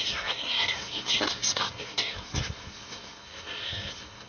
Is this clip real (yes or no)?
no